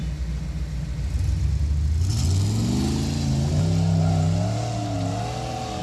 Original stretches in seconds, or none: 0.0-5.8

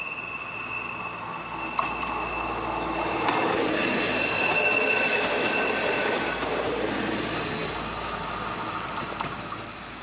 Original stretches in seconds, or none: 0.0-10.0

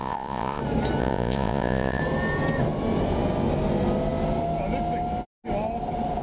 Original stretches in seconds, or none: 0.6-1.0; 2.0-6.2

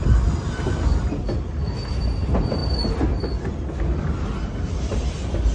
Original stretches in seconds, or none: 0.0-5.5

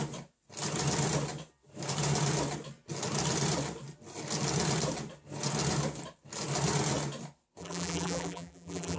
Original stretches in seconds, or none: 0.0-7.6

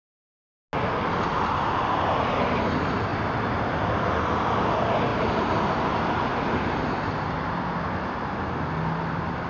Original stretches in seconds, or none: 0.0-3.1; 4.1-5.1; 5.7-6.3; 8.4-9.5

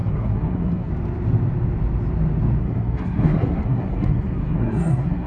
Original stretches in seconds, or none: 0.9-2.6